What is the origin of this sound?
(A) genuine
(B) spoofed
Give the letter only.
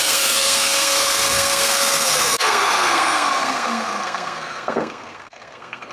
B